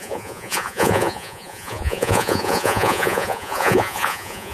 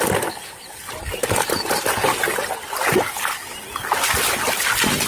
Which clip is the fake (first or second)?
first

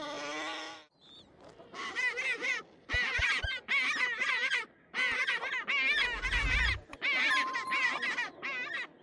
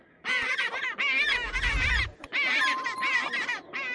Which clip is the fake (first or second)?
second